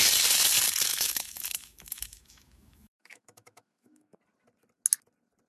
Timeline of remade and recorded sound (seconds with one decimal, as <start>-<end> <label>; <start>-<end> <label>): 0.0-0.9 recorded; 0.9-4.2 remade; 4.2-5.5 recorded